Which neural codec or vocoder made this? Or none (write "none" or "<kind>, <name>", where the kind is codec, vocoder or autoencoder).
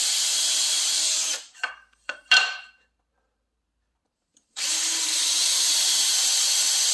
vocoder, BigVGAN v2